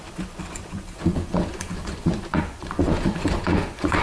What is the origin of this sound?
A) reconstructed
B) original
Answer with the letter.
A